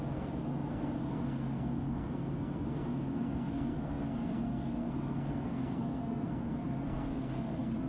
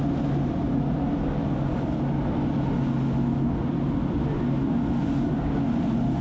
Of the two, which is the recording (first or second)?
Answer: second